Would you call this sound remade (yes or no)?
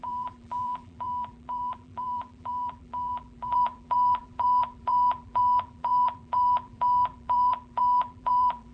yes